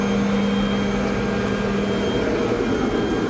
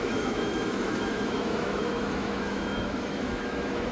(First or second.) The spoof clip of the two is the second